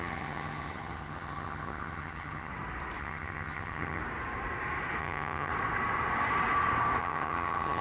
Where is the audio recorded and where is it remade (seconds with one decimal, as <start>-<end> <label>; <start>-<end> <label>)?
0.0-2.5 remade; 2.5-3.0 recorded; 3.0-4.0 remade; 4.0-5.0 recorded; 5.0-5.5 remade; 5.5-7.0 recorded; 7.0-7.8 remade